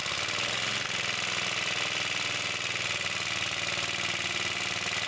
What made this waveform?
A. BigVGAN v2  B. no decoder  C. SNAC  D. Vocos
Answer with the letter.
B